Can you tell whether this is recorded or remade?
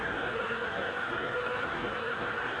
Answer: remade